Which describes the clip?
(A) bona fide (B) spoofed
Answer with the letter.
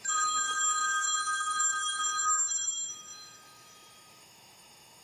B